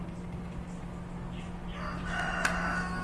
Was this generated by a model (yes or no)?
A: no